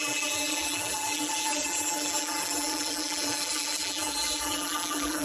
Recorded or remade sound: remade